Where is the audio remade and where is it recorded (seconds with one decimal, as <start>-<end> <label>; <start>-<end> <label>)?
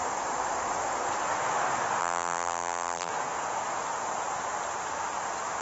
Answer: 0.0-2.0 recorded; 2.0-3.1 remade; 3.1-5.6 recorded